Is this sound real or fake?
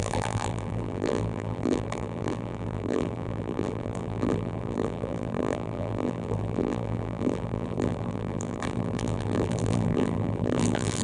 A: fake